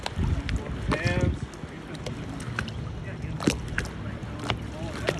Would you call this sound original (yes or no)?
yes